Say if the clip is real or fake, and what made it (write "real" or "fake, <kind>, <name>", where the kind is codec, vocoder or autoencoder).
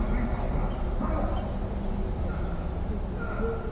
real